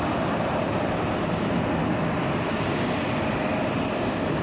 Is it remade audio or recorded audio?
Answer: recorded